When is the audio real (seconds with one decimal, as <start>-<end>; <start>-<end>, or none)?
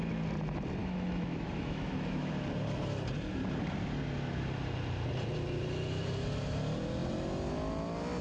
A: 0.0-0.8; 2.3-8.2